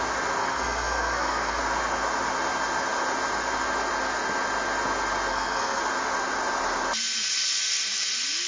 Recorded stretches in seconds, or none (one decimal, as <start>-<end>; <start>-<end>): 0.0-0.4; 1.6-5.3; 5.8-8.5